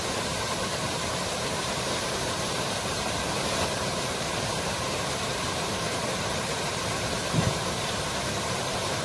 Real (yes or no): no